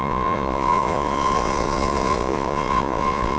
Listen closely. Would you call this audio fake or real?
fake